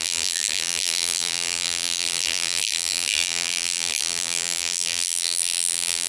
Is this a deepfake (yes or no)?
yes